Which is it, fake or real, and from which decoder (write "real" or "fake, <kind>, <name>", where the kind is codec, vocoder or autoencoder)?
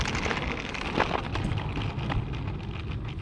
real